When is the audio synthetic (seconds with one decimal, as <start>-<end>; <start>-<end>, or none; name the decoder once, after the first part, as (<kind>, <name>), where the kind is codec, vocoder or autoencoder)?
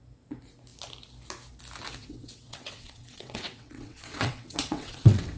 2.0-5.4 (vocoder, WaveNeXt)